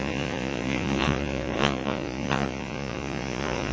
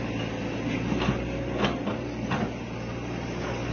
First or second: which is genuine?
second